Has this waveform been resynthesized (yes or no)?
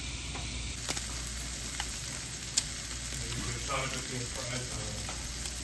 no